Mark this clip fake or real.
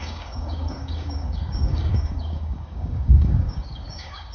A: fake